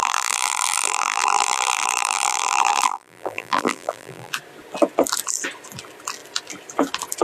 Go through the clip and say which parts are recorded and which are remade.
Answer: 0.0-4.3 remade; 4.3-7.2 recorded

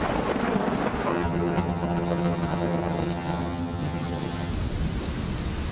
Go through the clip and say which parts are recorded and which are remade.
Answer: 0.0-1.1 recorded; 1.1-4.5 remade; 4.5-5.7 recorded

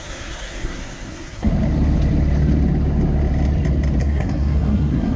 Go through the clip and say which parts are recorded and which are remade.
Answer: 0.0-1.5 remade; 1.5-4.0 recorded; 4.0-5.2 remade